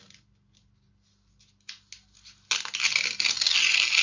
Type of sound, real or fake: real